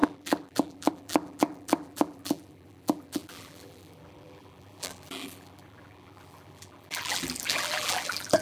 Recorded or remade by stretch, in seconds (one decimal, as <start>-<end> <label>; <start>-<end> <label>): 0.0-8.4 remade